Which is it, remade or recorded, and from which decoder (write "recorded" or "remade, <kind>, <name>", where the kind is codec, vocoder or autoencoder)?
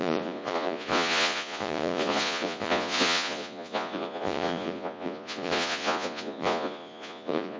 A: remade, vocoder, Vocos